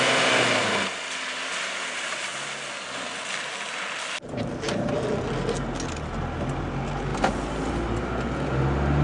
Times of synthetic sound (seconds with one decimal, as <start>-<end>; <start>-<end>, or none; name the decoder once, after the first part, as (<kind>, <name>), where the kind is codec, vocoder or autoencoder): none